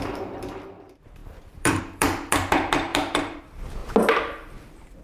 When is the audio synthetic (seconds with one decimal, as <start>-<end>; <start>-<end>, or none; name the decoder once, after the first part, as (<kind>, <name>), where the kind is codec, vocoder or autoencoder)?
0.0-3.8 (vocoder, BigVGAN v2); 4.6-5.0

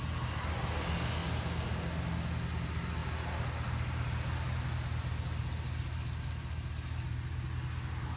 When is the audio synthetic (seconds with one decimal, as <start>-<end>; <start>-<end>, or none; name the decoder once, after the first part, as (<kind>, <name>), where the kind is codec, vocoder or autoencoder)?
none

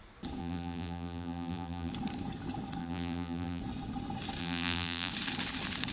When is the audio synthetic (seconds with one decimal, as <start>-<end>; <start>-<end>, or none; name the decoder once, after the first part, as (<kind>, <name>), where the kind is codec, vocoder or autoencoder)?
0.4-1.9 (vocoder, BigVGAN v2); 2.8-3.6; 4.4-5.1

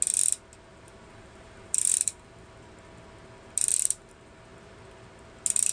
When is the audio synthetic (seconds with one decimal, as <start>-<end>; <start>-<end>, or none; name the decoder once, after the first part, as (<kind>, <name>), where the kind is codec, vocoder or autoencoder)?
0.7-2.5 (vocoder, BigVGAN v2); 3.7-4.4

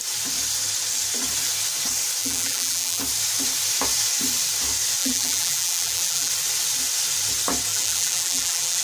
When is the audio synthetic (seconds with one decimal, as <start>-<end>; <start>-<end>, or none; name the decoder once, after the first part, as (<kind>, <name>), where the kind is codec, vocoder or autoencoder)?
2.2-3.0 (vocoder, BigVGAN v2); 5.0-6.3; 7.7-8.8

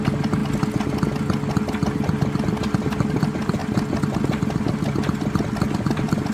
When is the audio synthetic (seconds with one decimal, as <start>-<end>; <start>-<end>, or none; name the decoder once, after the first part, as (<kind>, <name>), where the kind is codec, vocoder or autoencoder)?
0.0-0.4 (vocoder, BigVGAN v2); 3.1-3.6; 5.8-6.3

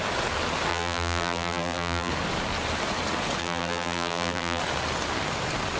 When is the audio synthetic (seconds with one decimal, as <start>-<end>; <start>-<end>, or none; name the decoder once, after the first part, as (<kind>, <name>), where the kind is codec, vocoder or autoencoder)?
0.7-2.1 (vocoder, BigVGAN v2); 3.4-4.6